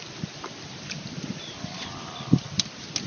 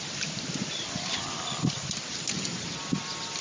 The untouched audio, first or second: first